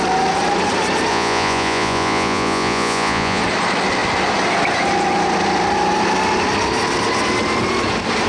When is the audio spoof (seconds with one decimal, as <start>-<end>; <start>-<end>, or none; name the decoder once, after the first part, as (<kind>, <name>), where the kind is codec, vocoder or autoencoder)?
1.1-3.4 (vocoder, Vocos)